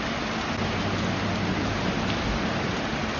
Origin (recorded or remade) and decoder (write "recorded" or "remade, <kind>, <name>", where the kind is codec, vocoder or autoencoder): recorded